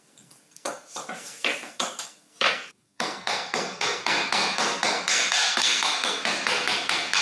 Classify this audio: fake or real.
fake